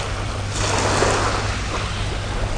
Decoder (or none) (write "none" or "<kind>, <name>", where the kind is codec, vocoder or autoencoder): none